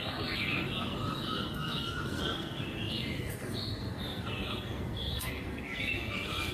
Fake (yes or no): yes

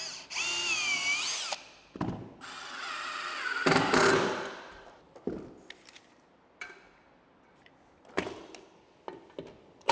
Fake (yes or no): no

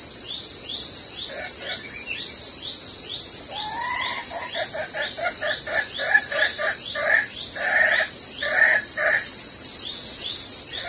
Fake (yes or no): no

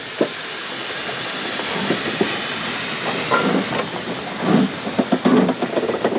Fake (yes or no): no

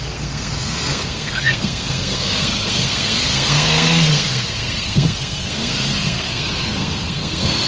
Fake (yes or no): yes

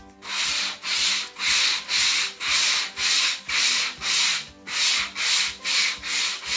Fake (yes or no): no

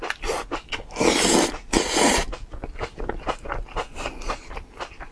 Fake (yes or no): no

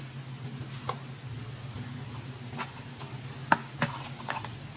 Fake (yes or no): no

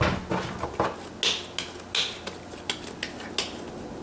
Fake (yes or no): no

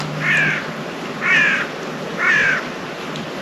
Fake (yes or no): no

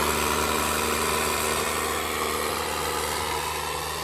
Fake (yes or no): no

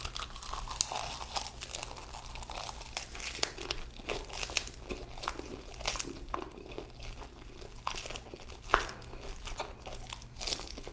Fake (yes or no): no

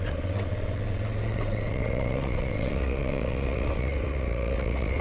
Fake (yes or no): yes